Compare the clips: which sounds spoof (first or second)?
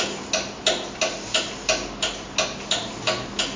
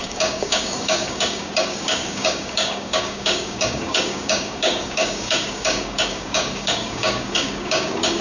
second